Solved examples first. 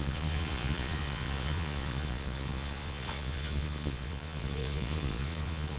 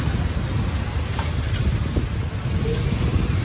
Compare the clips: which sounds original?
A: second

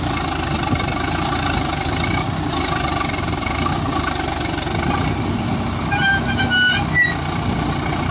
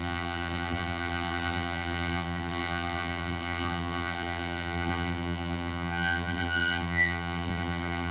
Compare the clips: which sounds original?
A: first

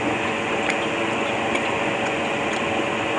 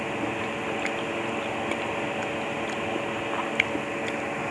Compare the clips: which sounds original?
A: second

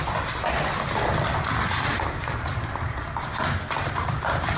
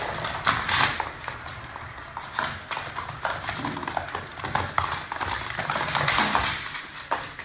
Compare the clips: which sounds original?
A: second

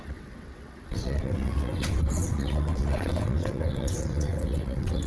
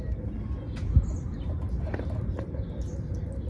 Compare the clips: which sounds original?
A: second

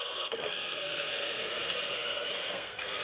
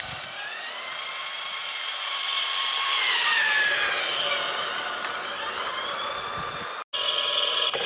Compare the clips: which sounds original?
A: second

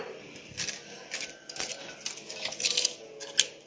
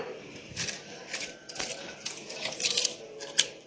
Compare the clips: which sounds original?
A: first